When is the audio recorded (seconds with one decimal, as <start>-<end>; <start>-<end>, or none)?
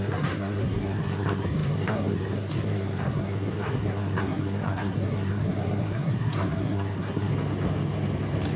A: 7.3-8.6